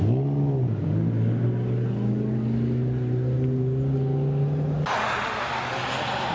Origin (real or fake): real